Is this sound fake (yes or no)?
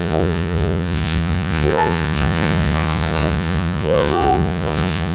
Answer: yes